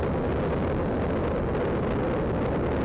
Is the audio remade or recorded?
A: recorded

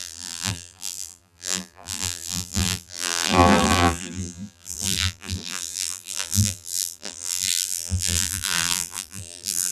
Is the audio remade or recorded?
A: remade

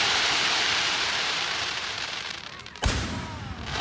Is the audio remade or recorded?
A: remade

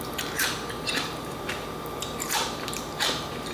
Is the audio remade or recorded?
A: remade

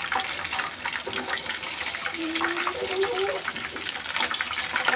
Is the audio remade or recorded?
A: remade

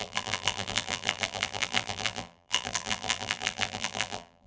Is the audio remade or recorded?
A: remade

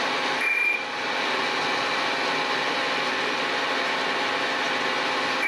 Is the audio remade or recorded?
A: recorded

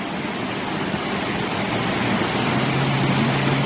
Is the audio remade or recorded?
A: recorded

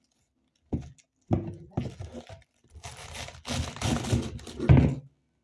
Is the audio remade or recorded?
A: recorded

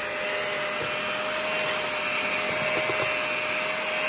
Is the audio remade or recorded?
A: recorded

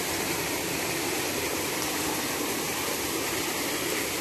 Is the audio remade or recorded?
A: recorded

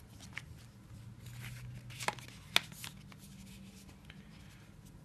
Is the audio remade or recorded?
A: recorded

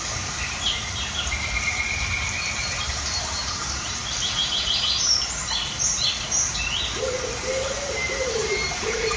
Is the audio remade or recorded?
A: remade